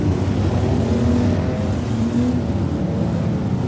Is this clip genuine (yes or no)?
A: yes